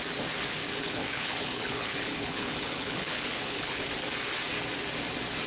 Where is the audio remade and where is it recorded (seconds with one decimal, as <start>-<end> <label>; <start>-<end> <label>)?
0.0-0.6 recorded; 0.6-3.9 remade; 3.9-5.5 recorded